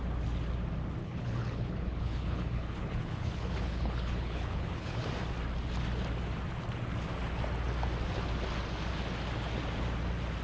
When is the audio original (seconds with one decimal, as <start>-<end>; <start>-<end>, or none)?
0.0-1.0; 5.0-10.4